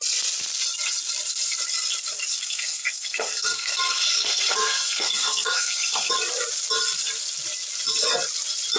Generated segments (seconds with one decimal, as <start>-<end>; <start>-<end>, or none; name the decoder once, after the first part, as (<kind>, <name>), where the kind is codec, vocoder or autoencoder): 2.3-6.1 (codec, SNAC)